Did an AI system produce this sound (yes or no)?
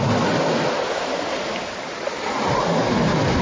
no